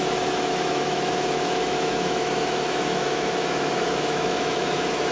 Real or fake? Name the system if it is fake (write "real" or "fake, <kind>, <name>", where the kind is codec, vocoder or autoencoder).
fake, autoencoder, DAC-VAE